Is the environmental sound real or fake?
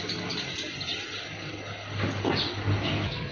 real